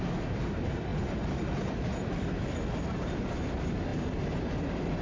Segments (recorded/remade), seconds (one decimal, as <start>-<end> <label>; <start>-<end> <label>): 0.0-0.9 remade; 0.9-3.0 recorded; 3.0-3.9 remade; 3.9-4.6 recorded; 4.6-5.0 remade